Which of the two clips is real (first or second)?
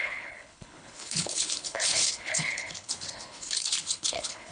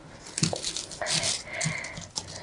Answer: second